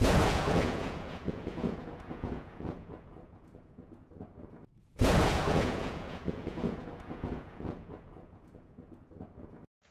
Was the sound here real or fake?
fake